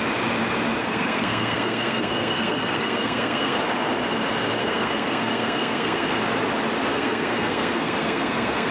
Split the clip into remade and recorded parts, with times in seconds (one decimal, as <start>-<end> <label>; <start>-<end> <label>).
0.0-0.8 recorded; 0.8-3.6 remade; 3.6-4.6 recorded; 4.6-6.2 remade; 6.2-6.9 recorded; 6.9-8.7 remade